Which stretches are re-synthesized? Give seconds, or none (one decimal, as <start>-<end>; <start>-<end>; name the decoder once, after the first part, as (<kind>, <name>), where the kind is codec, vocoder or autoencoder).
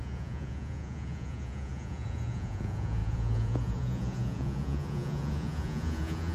0.0-6.3 (vocoder, Vocos)